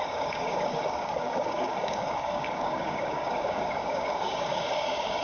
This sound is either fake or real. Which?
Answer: fake